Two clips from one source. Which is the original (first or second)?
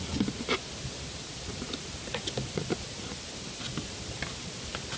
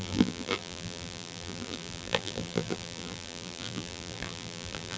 first